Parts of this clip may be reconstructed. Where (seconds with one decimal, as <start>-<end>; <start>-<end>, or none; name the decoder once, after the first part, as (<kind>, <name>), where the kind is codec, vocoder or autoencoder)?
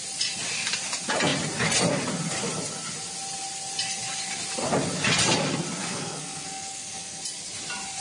5.8-7.2 (codec, SNAC)